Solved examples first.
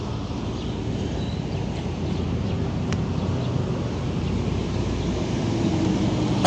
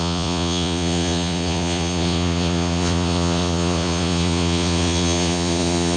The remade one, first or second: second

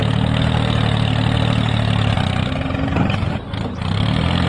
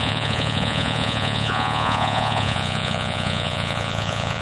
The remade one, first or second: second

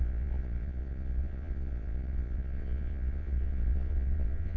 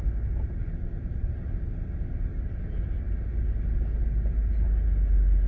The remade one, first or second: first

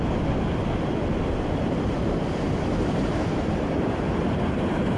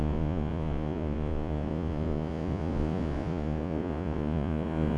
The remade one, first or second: second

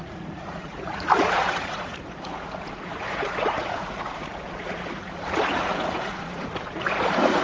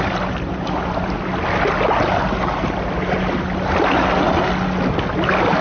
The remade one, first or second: first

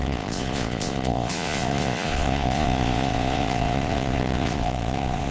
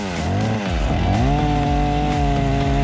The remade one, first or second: first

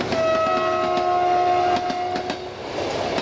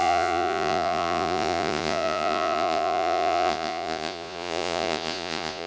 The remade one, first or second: second